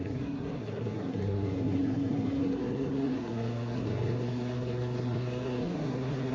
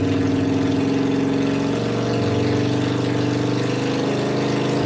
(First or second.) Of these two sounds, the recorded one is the second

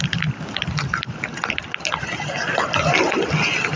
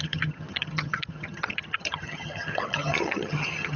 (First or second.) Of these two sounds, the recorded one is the first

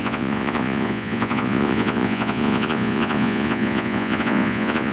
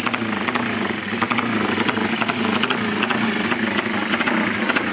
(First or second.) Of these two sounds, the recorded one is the second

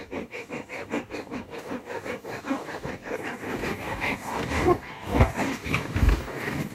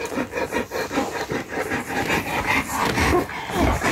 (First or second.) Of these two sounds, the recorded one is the second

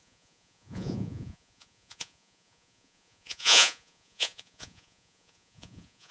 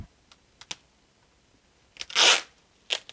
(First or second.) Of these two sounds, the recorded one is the second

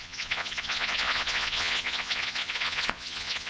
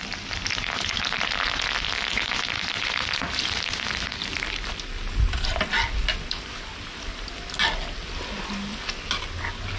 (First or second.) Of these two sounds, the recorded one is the second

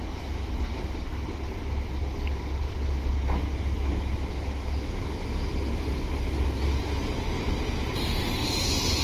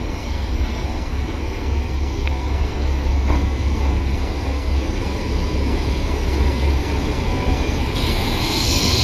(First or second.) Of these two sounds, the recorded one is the first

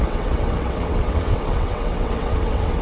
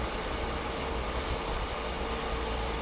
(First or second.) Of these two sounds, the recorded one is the second